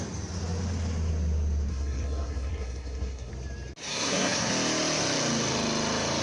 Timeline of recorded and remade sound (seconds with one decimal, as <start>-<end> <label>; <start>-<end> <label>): 0.0-1.7 recorded; 1.7-3.3 remade; 3.3-3.8 recorded; 3.8-4.5 remade; 4.5-6.2 recorded